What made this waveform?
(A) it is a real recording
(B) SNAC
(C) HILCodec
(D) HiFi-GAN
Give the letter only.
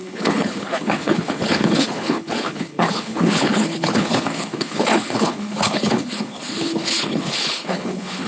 C